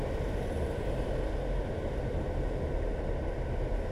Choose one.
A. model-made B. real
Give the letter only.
B